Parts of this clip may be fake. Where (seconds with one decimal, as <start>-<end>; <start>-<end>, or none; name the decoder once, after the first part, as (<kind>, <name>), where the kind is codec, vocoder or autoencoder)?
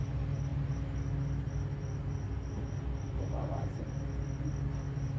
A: none